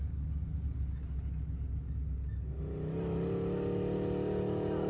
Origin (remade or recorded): recorded